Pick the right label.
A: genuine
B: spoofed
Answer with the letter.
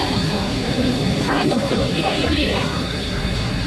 B